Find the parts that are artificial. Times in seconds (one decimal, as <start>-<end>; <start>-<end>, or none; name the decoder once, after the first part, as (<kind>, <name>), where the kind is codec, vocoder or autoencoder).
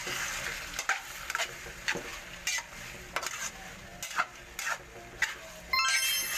none